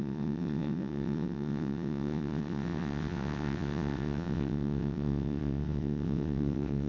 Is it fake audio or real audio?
fake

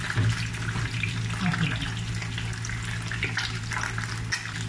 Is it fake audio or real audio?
real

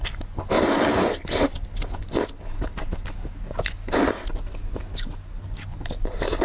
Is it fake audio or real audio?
real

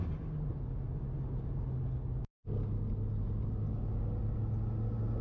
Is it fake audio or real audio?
real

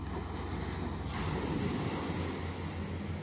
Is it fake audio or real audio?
real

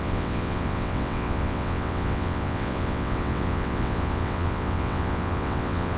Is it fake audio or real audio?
fake